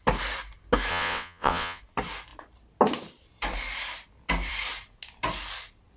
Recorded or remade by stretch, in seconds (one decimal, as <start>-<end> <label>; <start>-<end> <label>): 0.0-0.9 recorded; 0.9-1.8 remade; 1.8-6.0 recorded